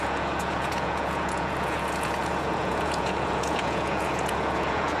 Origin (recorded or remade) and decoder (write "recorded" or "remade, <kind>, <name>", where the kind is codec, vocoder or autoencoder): remade, vocoder, Vocos